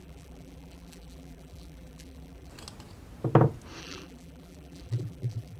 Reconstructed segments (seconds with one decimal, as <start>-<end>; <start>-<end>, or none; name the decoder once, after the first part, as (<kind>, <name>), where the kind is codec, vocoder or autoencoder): 0.0-2.5 (vocoder, BigVGAN v2); 3.8-5.6